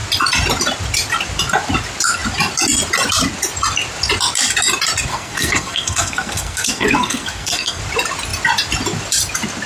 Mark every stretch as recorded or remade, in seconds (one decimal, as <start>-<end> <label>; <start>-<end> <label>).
0.0-5.1 recorded; 5.1-7.8 remade; 7.8-9.7 recorded